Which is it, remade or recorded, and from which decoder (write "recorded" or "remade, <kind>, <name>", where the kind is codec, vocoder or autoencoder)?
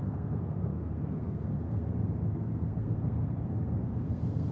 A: remade, codec, SNAC